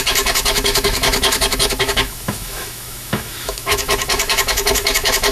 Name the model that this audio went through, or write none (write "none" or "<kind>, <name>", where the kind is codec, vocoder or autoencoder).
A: autoencoder, DAC-VAE